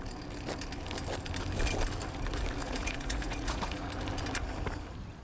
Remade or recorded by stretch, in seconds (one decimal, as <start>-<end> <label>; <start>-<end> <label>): 0.0-2.6 recorded; 2.6-3.9 remade; 3.9-5.2 recorded